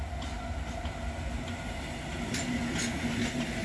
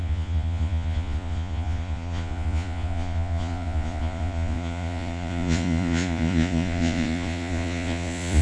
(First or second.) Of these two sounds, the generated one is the second